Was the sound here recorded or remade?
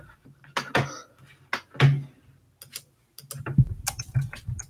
recorded